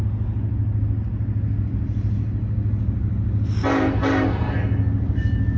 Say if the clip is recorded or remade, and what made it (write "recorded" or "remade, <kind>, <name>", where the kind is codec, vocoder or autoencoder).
recorded